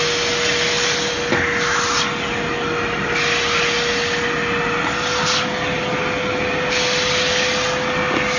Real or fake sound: real